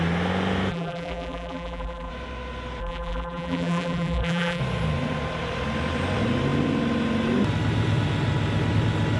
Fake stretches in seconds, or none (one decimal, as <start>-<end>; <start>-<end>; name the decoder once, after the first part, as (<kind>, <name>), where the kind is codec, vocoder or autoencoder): 0.7-2.1 (vocoder, BigVGAN v2); 2.8-4.6